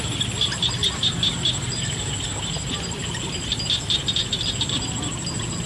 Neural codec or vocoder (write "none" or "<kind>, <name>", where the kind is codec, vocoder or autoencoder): none